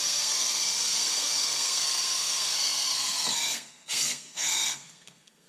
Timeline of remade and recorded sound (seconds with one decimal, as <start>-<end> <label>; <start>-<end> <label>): 0.0-5.5 remade